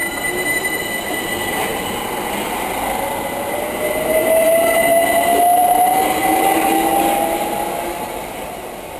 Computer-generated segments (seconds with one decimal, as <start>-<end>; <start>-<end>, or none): 0.0-0.8